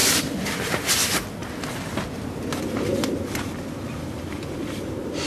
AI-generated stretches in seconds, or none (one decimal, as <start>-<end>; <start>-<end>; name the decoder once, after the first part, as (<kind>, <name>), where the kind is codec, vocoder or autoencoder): none